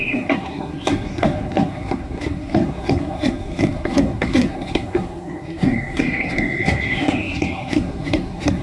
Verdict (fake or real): fake